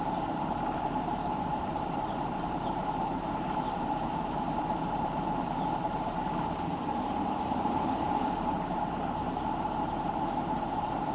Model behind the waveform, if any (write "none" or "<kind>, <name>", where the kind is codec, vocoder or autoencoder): vocoder, BigVGAN v2